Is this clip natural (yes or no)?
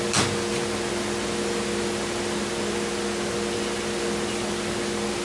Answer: yes